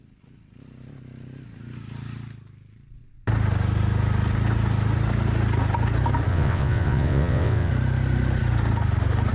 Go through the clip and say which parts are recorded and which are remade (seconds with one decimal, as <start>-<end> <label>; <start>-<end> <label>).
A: 0.0-6.3 recorded; 6.3-7.7 remade; 7.7-9.3 recorded